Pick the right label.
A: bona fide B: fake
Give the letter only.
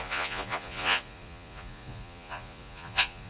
B